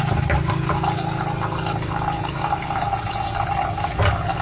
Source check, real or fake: real